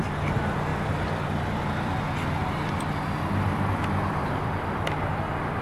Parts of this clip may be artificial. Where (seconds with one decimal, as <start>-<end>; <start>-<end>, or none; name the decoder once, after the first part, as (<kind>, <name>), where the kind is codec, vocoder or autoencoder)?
0.7-2.0 (vocoder, BigVGAN v2); 2.4-5.1